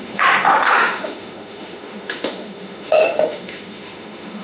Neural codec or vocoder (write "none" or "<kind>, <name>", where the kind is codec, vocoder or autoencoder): autoencoder, DAC-VAE